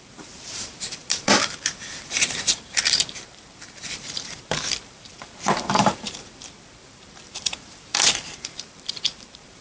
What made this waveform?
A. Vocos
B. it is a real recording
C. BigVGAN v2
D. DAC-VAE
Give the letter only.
C